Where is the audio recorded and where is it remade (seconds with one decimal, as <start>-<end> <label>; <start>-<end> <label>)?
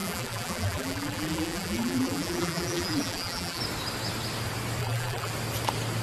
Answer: 0.0-3.6 remade; 3.6-4.8 recorded; 4.8-5.3 remade; 5.3-6.0 recorded